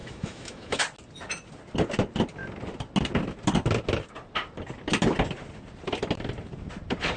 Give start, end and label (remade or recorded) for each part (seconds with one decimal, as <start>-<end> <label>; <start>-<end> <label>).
0.0-0.8 remade; 0.8-7.2 recorded